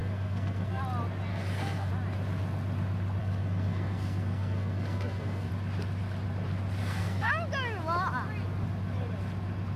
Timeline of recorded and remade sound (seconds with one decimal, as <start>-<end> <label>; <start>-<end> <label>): 0.0-0.8 remade; 0.8-1.3 recorded; 1.3-1.9 remade; 1.9-3.2 recorded; 3.2-5.5 remade; 5.5-6.8 recorded; 6.8-7.3 remade; 7.3-9.8 recorded